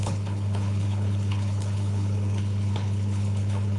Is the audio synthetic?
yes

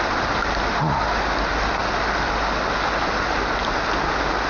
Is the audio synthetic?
no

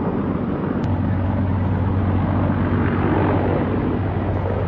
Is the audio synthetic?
no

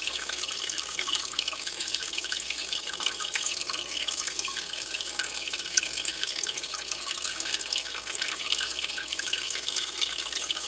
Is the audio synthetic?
yes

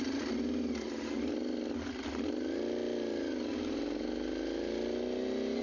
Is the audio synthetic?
no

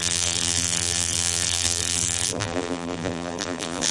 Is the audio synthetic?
yes